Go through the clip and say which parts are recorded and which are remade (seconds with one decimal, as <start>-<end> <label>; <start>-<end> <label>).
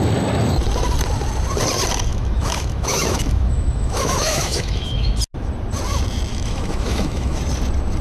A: 0.0-2.1 recorded; 2.1-5.1 remade; 5.1-6.3 recorded; 6.3-7.4 remade; 7.4-8.0 recorded